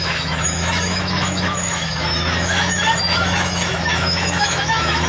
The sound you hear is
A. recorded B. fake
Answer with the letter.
B